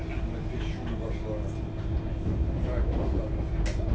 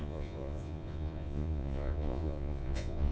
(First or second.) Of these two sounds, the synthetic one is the second